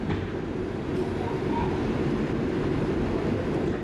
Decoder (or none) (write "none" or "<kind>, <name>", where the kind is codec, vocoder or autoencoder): vocoder, BigVGAN v2